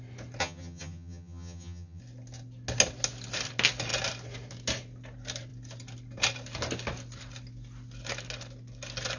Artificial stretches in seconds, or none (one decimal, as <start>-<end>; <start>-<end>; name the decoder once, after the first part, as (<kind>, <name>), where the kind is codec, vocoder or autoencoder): 0.4-2.0 (vocoder, HiFi-GAN)